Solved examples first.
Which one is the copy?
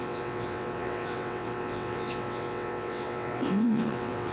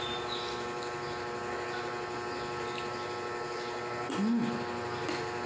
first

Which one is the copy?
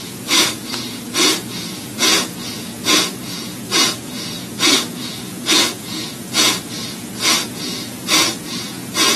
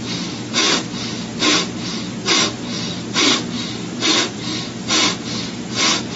first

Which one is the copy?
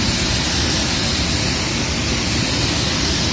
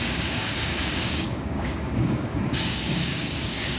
second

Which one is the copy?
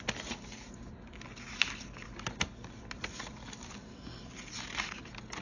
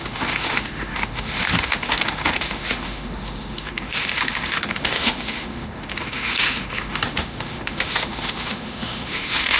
second